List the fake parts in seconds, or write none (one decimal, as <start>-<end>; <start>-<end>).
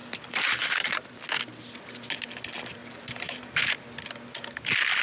0.0-1.2; 2.8-3.6